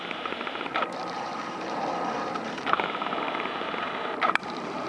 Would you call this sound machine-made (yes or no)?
yes